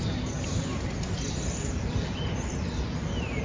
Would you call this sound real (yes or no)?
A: yes